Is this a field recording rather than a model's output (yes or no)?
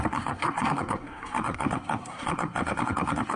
no